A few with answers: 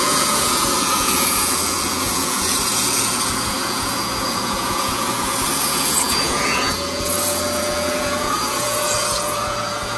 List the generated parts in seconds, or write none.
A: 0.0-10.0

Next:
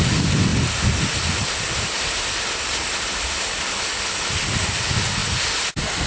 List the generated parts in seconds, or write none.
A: none